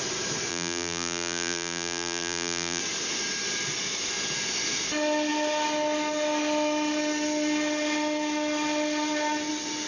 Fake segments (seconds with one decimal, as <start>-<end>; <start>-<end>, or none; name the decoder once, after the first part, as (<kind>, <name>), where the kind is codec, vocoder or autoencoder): 0.5-2.8 (vocoder, BigVGAN v2)